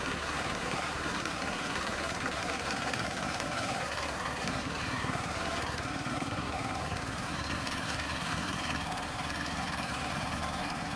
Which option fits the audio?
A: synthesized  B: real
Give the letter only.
A